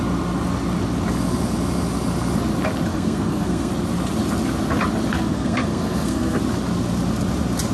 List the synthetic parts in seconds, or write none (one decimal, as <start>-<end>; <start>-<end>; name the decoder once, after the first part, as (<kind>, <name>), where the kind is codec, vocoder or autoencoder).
2.9-3.7 (codec, SNAC); 5.1-6.4